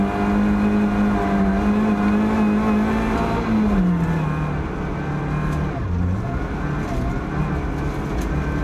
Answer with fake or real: real